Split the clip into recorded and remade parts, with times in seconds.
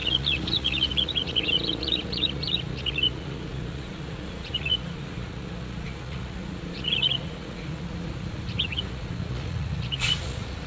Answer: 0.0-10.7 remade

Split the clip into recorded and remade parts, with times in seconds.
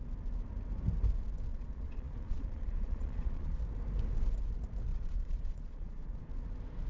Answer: 0.0-1.5 recorded; 1.5-3.6 remade; 3.6-4.9 recorded; 4.9-6.2 remade; 6.2-6.9 recorded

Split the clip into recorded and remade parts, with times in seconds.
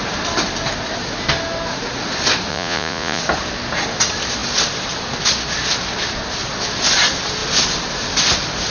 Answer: 0.0-2.5 recorded; 2.5-3.2 remade; 3.2-8.7 recorded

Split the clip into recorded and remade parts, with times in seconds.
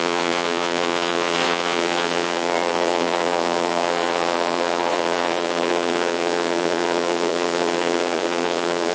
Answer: 0.0-8.9 remade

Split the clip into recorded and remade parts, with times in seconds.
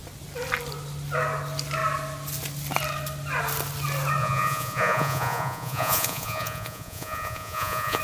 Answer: 0.0-4.2 recorded; 4.2-8.0 remade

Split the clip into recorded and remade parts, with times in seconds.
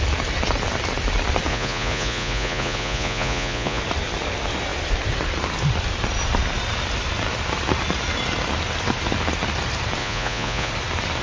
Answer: 0.0-1.5 recorded; 1.5-3.8 remade; 3.8-10.0 recorded; 10.0-10.7 remade; 10.7-11.2 recorded